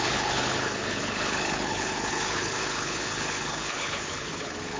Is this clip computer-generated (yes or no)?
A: yes